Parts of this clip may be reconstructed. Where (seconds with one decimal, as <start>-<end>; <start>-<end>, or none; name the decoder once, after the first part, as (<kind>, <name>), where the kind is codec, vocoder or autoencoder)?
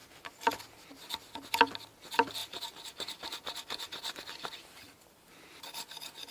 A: 0.0-0.5 (vocoder, BigVGAN v2); 2.4-5.3